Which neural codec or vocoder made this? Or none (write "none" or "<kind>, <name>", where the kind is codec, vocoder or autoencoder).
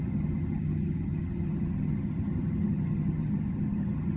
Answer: vocoder, HiFi-GAN